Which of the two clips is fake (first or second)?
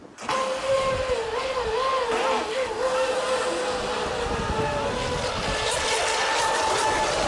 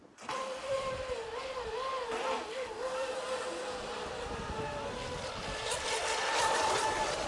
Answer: second